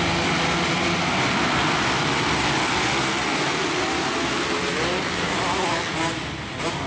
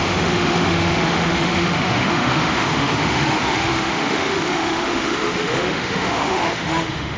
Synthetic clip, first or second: second